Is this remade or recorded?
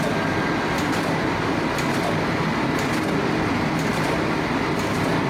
recorded